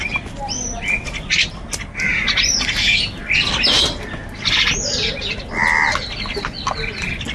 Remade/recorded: recorded